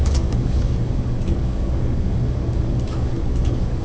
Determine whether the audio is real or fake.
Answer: fake